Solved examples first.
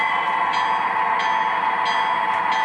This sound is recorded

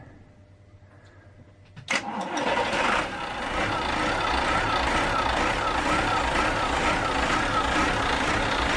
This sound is recorded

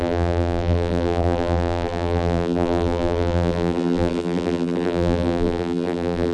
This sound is remade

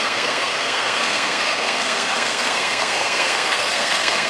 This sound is remade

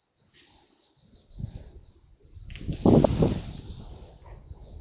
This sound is recorded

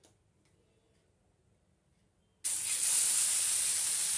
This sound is recorded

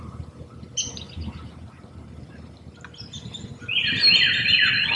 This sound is recorded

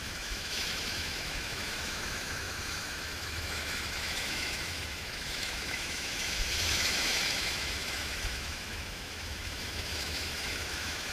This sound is remade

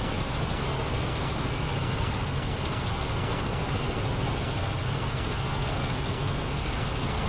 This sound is remade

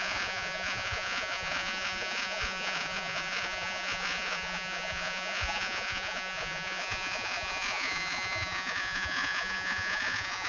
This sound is remade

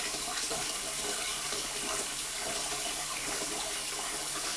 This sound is remade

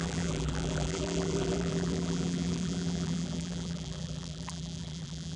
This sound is remade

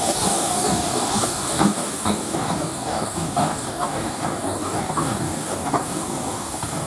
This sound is remade